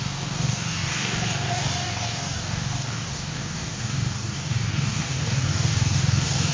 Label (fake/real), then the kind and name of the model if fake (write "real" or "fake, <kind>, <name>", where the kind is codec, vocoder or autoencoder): fake, codec, DAC